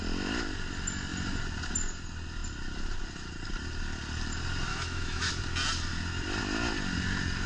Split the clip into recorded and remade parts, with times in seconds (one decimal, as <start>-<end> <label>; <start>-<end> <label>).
0.0-4.7 recorded; 4.7-5.3 remade; 5.3-7.5 recorded